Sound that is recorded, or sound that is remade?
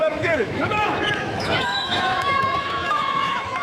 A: remade